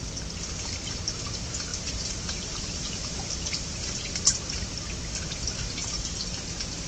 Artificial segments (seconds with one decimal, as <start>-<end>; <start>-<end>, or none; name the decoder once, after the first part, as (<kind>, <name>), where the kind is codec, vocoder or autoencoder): 1.7-4.7 (vocoder, BigVGAN v2); 5.8-6.4